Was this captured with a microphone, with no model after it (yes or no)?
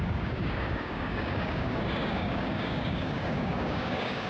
no